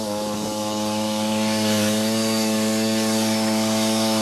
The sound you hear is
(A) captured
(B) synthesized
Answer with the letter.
B